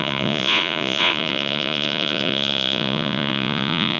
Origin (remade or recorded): remade